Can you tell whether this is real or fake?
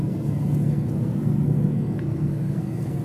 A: fake